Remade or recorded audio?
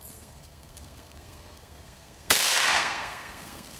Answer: remade